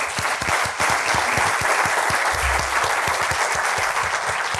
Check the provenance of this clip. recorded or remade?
recorded